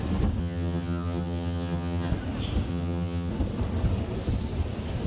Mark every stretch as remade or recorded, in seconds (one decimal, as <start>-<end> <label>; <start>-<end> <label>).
0.0-0.4 recorded; 0.4-2.1 remade; 2.1-2.7 recorded; 2.7-3.3 remade; 3.3-5.1 recorded